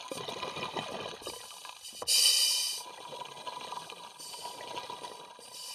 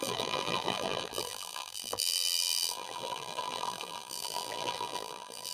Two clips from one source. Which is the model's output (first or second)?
second